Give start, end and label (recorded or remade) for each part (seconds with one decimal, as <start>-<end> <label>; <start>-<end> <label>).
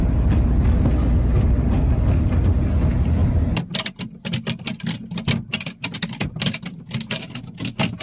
0.0-8.0 recorded